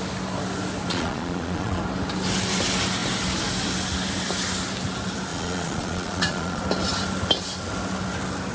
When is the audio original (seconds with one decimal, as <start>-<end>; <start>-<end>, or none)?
0.0-0.9; 1.8-5.3; 6.6-8.5